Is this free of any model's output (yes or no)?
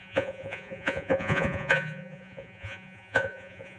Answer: no